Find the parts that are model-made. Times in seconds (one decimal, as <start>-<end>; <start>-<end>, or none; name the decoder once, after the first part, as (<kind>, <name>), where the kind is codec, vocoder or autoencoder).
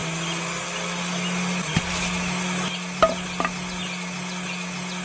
none